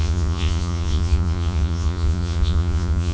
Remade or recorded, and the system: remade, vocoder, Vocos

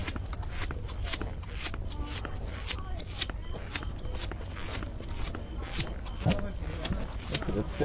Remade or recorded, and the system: recorded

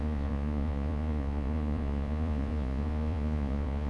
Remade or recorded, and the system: remade, vocoder, Vocos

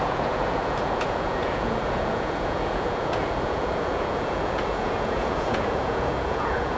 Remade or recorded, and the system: remade, vocoder, Vocos